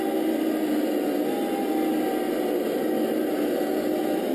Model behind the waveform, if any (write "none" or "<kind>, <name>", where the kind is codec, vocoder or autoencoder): none